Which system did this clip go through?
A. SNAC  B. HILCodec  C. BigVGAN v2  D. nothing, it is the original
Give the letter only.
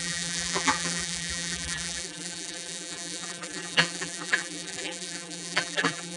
C